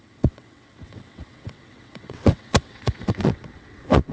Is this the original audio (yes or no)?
no